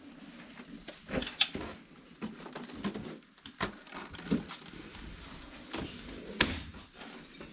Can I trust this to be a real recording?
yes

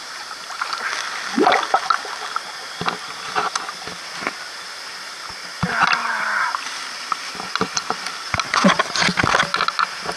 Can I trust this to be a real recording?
yes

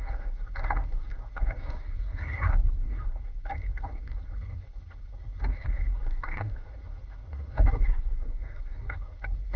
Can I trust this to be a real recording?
no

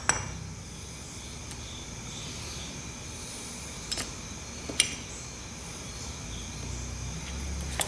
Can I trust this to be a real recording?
yes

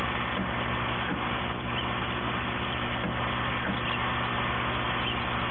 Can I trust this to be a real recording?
yes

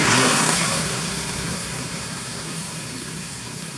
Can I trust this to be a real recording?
no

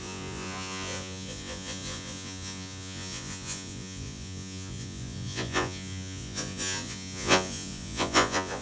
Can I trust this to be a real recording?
no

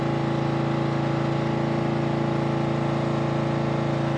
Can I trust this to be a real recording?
yes